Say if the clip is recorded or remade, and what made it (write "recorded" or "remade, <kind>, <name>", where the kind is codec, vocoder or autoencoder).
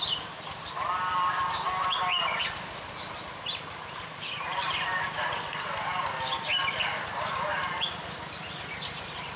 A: recorded